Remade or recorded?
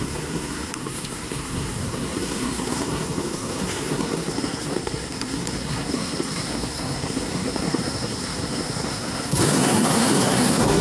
remade